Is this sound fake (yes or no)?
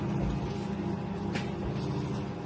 no